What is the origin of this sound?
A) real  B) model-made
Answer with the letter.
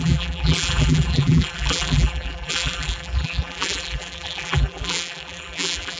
B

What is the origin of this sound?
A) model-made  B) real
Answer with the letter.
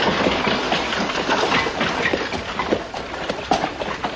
B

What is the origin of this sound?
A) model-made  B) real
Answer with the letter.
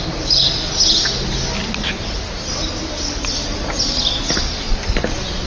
B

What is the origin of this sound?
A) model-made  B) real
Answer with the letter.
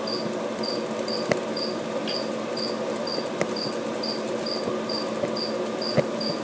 B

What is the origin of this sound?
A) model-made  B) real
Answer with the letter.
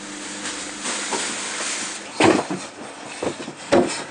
B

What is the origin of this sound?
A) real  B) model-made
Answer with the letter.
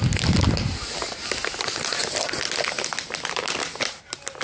A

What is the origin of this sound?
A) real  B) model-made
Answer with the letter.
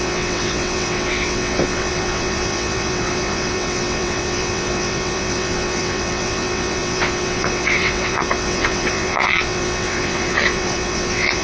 B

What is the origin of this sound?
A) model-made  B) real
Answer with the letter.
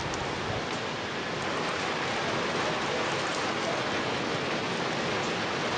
B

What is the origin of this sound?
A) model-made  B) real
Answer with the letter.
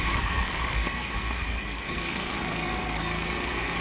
A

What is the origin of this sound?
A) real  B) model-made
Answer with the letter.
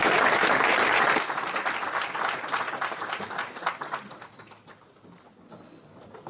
A